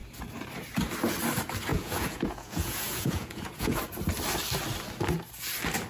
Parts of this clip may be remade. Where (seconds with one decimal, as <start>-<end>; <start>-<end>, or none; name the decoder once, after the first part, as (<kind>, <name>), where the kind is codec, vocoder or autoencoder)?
1.7-3.8 (vocoder, Vocos)